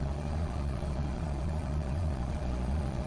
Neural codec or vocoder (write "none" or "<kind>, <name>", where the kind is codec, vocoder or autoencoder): vocoder, Vocos